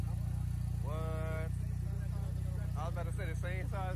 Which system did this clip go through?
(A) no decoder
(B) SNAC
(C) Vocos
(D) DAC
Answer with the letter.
A